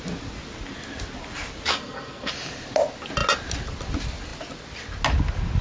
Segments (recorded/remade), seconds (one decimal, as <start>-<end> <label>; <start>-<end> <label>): 0.0-1.7 recorded; 1.7-2.3 remade; 2.3-5.6 recorded